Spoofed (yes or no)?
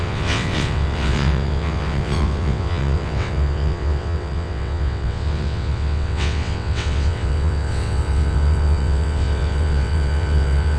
yes